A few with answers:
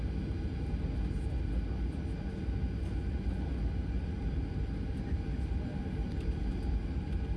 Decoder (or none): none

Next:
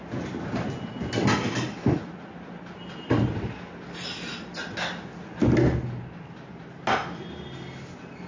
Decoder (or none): none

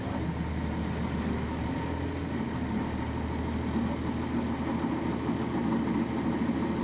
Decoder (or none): none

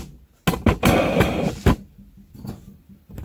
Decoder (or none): none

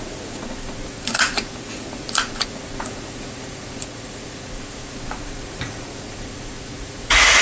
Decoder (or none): vocoder, Vocos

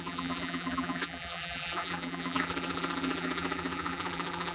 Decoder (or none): vocoder, BigVGAN v2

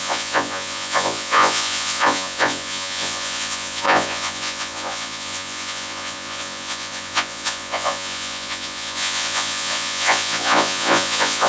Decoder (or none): vocoder, Vocos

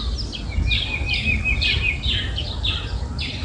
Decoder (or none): none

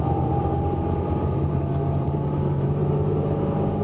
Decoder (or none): vocoder, BigVGAN v2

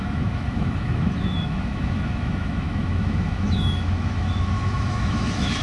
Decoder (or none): autoencoder, DAC-VAE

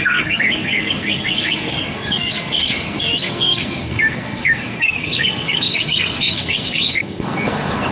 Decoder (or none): codec, SNAC